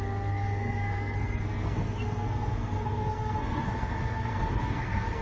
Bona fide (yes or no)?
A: no